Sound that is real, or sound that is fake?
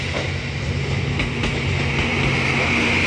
real